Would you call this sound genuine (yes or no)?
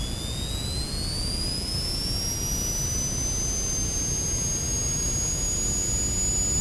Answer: yes